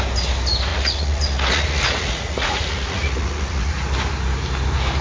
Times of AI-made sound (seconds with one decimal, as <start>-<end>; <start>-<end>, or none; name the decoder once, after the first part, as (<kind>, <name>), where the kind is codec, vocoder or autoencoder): 0.7-3.7 (vocoder, Vocos)